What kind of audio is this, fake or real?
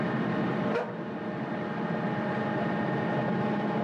real